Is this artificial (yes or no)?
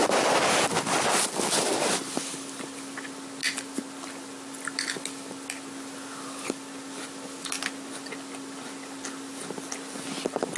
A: no